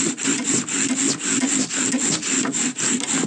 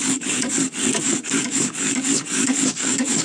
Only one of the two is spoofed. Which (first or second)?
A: second